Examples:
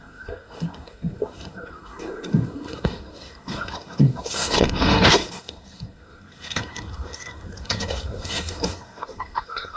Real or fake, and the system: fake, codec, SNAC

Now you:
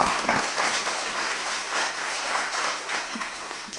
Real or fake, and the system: fake, codec, SNAC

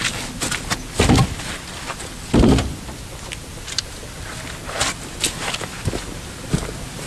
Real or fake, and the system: real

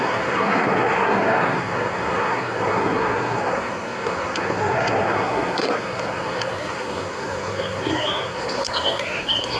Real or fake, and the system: fake, codec, SNAC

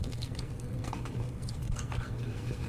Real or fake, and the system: fake, codec, SNAC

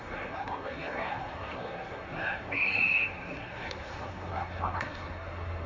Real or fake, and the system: fake, codec, SNAC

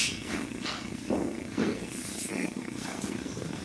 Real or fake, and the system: fake, codec, SNAC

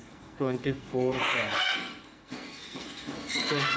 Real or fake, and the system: fake, codec, SNAC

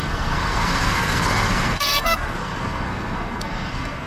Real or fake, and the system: fake, codec, SNAC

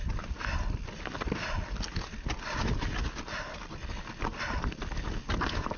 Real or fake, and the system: real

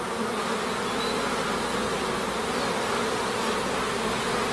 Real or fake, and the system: real